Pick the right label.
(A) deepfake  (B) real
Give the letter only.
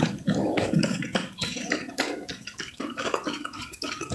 A